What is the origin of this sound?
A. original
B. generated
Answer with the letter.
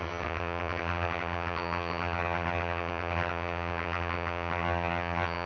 B